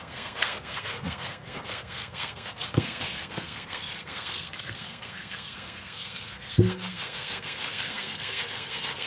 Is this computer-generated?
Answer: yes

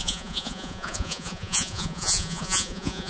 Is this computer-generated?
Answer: yes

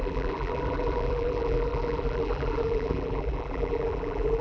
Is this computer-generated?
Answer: yes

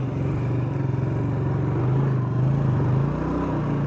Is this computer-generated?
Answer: no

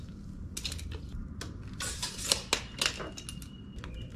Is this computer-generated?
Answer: no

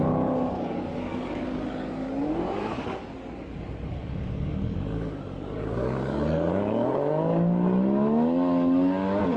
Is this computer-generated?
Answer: yes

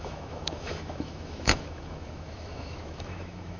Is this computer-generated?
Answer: yes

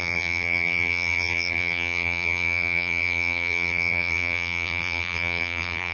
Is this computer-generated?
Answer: yes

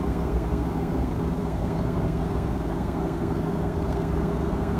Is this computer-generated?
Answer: yes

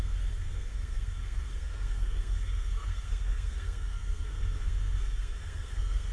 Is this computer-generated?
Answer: yes